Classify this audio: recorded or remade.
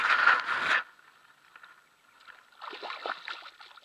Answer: recorded